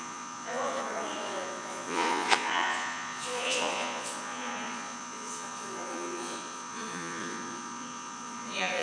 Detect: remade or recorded remade